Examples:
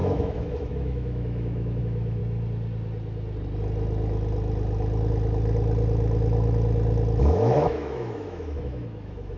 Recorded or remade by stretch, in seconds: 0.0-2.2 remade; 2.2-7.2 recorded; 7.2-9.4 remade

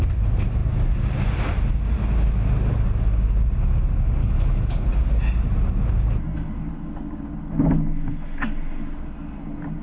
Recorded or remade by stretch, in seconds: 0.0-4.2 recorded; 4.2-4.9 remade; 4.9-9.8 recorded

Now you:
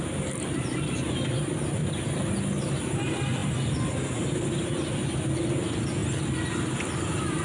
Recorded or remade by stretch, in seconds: 0.0-7.4 recorded